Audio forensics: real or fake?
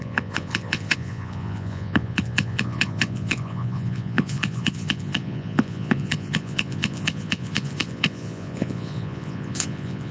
fake